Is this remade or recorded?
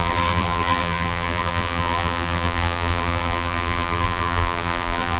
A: remade